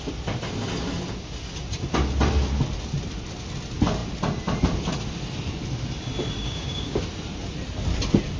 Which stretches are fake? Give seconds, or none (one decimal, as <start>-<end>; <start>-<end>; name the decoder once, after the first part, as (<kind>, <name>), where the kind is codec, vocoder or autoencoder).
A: 6.4-7.0 (codec, DAC)